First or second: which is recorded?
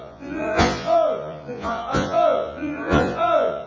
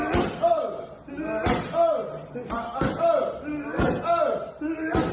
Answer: second